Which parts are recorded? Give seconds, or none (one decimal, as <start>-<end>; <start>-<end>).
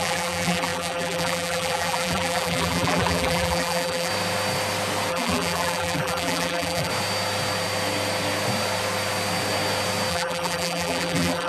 4.1-5.1; 6.9-10.1